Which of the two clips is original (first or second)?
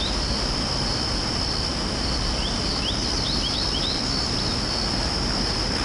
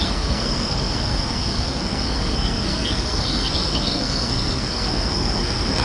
first